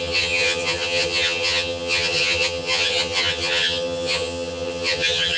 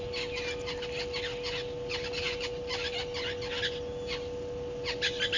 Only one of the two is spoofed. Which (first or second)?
first